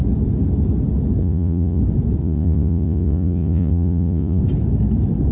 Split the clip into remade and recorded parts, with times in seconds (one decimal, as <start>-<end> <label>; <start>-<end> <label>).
0.0-1.2 recorded; 1.2-1.8 remade; 1.8-2.2 recorded; 2.2-4.4 remade; 4.4-5.3 recorded